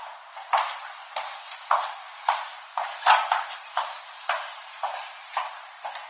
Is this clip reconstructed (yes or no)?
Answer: no